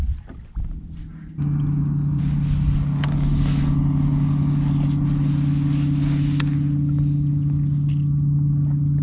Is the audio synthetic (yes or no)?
no